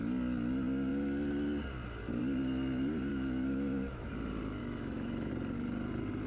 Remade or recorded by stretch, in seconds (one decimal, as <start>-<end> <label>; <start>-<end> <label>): 0.0-3.1 recorded; 3.1-4.1 remade; 4.1-4.6 recorded; 4.6-5.3 remade; 5.3-6.3 recorded